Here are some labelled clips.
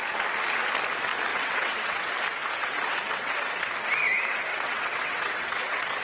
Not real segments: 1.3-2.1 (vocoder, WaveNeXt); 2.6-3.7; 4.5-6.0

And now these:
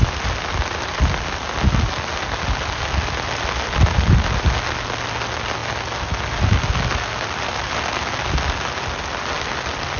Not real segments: none

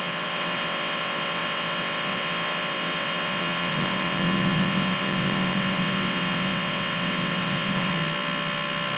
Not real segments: 0.0-7.9 (vocoder, WaveNeXt)